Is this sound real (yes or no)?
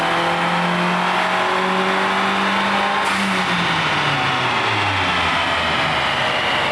yes